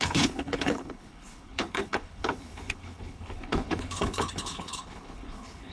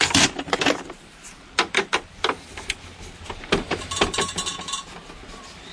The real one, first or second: second